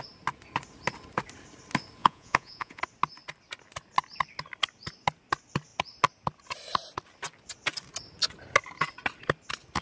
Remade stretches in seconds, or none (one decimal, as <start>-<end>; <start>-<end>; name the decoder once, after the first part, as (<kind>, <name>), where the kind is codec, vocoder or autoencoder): 2.0-2.8 (vocoder, Vocos)